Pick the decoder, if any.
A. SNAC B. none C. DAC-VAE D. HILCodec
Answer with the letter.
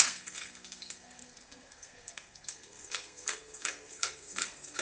A